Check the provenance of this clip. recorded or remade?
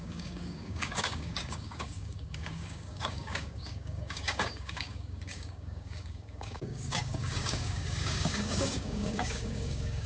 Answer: remade